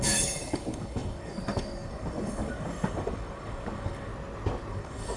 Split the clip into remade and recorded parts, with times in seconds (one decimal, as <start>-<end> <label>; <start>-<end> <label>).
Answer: 0.0-4.1 remade; 4.1-4.7 recorded; 4.7-5.2 remade

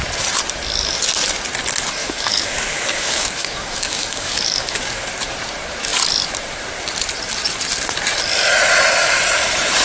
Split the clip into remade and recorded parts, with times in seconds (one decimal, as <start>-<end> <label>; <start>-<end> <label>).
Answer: 0.0-2.0 recorded; 2.0-5.1 remade; 5.1-9.8 recorded

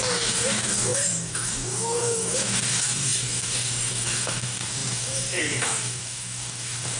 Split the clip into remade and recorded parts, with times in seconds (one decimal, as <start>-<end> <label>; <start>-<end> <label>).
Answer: 0.0-7.0 remade

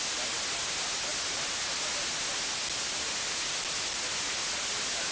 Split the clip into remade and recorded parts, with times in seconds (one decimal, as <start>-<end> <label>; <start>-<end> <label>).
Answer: 0.0-5.1 recorded

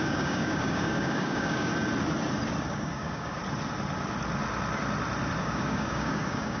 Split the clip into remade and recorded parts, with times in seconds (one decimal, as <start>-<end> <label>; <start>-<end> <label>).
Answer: 0.0-1.7 remade; 1.7-2.7 recorded; 2.7-3.4 remade; 3.4-5.4 recorded; 5.4-6.6 remade

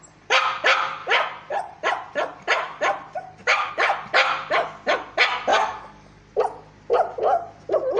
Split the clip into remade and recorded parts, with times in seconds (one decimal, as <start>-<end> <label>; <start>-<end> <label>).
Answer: 0.0-5.5 recorded; 5.5-6.2 remade; 6.2-8.0 recorded

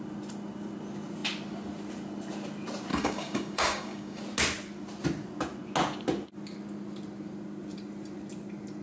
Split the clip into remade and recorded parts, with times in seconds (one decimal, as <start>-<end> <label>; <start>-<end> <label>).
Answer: 0.0-2.9 recorded; 2.9-4.2 remade; 4.2-8.8 recorded

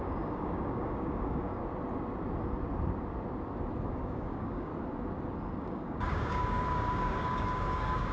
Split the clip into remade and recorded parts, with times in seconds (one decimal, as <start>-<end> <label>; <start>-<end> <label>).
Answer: 0.0-1.6 remade; 1.6-3.9 recorded; 3.9-4.7 remade; 4.7-5.6 recorded; 5.6-8.1 remade